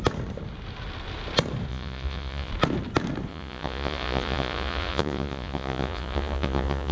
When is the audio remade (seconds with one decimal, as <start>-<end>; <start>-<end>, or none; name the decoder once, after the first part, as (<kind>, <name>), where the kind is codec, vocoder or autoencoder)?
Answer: 1.7-2.5 (vocoder, Vocos); 3.3-6.9